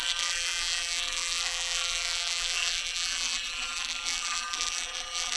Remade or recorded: remade